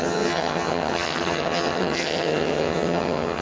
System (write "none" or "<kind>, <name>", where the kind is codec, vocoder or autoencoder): vocoder, HiFi-GAN